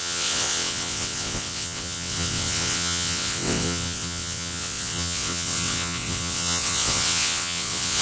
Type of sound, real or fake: fake